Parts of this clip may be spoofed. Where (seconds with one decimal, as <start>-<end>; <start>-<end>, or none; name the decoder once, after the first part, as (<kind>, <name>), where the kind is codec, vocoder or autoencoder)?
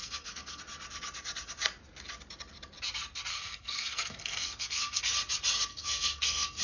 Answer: 0.0-0.6 (codec, SNAC); 3.3-5.0; 5.7-6.6